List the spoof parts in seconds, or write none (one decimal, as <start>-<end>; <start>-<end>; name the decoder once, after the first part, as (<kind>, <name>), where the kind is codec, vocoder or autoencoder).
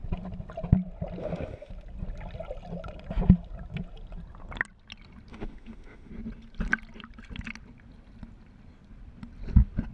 1.2-1.7 (autoencoder, DAC-VAE); 5.3-6.1